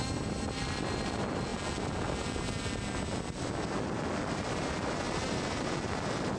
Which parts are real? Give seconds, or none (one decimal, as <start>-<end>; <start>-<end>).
1.5-5.3